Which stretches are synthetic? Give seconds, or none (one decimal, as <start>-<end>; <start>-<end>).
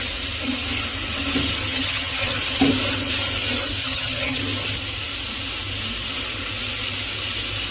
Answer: 1.7-2.4; 3.8-4.4